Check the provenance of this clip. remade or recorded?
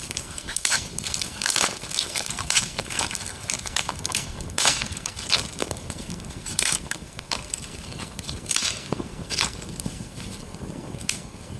remade